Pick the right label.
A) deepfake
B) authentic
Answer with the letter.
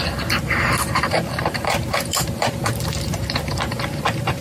A